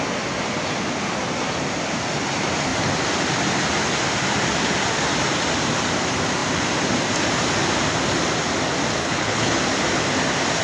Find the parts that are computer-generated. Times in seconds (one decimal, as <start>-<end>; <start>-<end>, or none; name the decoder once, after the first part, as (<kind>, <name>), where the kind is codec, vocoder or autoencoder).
9.0-9.6 (codec, HILCodec)